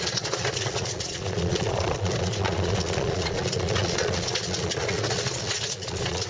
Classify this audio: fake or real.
fake